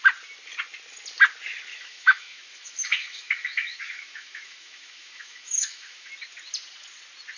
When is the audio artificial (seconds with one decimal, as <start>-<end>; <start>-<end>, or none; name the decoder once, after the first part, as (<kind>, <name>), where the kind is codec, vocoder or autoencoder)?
1.7-6.1 (autoencoder, DAC-VAE)